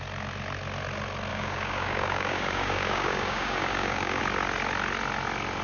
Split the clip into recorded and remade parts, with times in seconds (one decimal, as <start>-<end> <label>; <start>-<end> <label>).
0.0-1.3 recorded; 1.3-4.2 remade; 4.2-5.6 recorded